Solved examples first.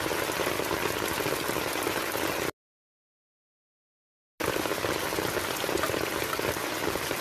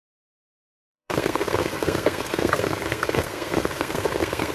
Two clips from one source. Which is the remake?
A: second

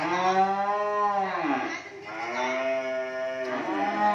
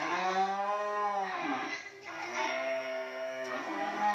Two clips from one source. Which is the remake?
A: second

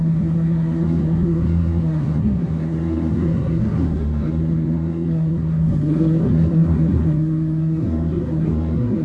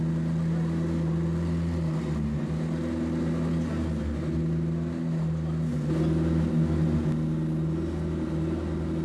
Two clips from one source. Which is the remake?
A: first